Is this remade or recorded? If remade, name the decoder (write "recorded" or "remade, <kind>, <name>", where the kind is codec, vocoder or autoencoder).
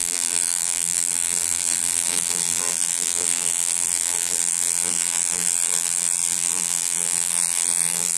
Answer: remade, vocoder, BigVGAN v2